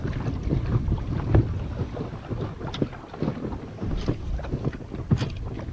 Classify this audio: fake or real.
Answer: real